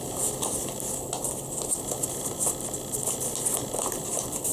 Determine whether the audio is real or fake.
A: real